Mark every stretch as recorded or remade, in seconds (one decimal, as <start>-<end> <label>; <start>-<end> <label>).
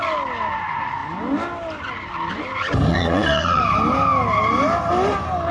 0.0-2.9 recorded; 2.9-3.6 remade; 3.6-5.5 recorded